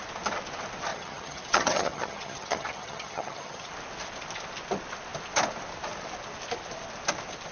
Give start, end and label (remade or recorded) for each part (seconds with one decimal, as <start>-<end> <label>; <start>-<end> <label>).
0.0-0.9 recorded; 0.9-3.7 remade; 3.7-7.5 recorded